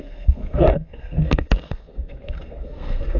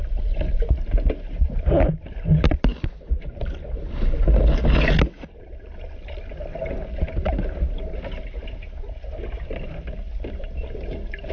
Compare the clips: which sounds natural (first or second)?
second